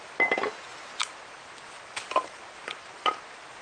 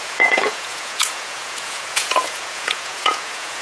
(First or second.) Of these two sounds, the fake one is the second